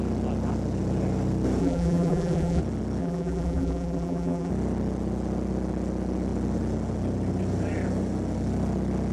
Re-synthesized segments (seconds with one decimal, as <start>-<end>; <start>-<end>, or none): 1.6-2.6; 3.0-4.5